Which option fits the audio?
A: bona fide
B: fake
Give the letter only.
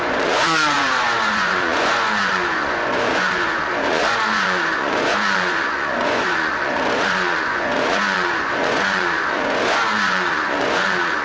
B